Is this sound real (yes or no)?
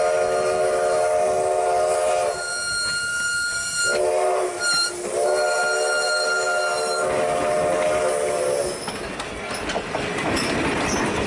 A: yes